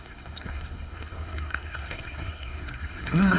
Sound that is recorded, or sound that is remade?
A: remade